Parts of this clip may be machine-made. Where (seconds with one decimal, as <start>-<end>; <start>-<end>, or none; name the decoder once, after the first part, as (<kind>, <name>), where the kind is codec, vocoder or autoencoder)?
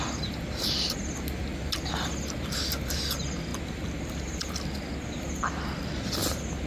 none